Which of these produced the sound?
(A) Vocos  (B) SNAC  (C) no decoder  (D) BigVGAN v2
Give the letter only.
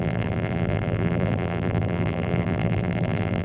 D